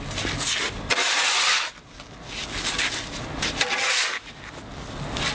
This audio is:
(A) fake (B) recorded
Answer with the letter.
B